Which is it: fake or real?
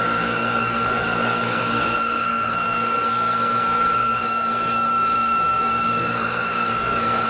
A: fake